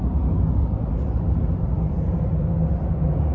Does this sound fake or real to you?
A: real